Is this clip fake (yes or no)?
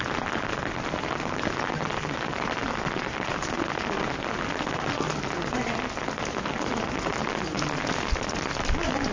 no